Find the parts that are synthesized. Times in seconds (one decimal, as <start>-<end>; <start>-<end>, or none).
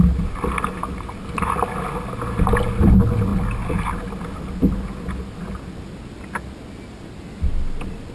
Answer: 3.3-4.0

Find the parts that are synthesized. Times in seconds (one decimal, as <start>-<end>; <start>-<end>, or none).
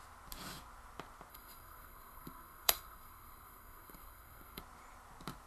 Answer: 1.3-4.6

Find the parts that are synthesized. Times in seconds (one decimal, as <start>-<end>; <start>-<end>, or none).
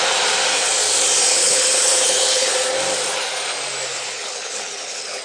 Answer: 1.3-2.5; 3.9-5.2